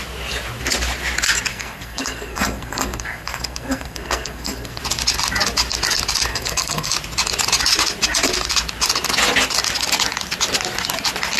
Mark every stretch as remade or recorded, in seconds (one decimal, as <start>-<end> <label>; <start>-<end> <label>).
0.0-1.5 recorded; 1.5-4.8 remade; 4.8-6.3 recorded; 6.3-6.9 remade; 6.9-11.4 recorded